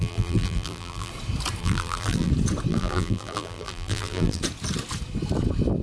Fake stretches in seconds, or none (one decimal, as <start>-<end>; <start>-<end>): 0.0-1.1; 1.6-2.3; 2.7-4.4